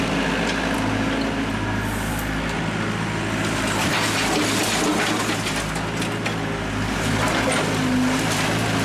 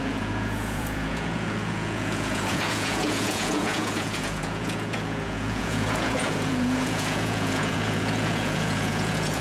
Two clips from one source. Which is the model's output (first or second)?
second